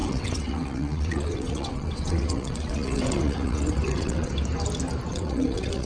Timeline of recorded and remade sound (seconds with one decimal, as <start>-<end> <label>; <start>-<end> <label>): 0.0-4.3 remade; 4.3-5.1 recorded; 5.1-5.9 remade